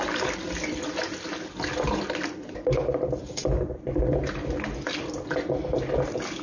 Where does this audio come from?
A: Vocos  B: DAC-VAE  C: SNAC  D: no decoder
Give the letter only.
D